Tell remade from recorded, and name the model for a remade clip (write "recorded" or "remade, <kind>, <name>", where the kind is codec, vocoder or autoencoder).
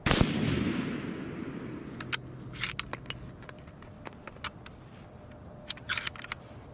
recorded